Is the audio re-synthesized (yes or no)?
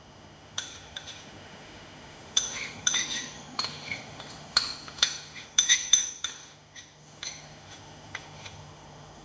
yes